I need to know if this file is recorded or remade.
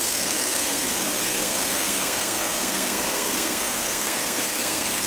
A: remade